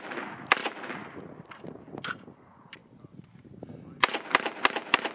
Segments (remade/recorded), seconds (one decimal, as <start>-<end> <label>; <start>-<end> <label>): 0.0-5.1 recorded